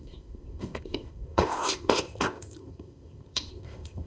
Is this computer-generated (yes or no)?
yes